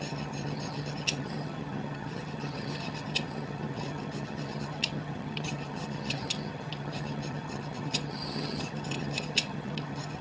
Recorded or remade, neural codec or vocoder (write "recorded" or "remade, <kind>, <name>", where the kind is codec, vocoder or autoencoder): remade, vocoder, HiFi-GAN